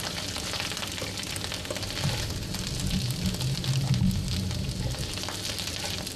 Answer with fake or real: real